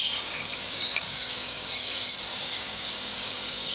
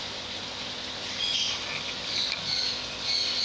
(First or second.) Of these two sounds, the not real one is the first